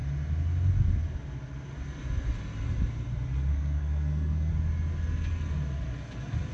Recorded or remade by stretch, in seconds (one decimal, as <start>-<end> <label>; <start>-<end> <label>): 0.0-3.5 recorded; 3.5-4.5 remade; 4.5-6.5 recorded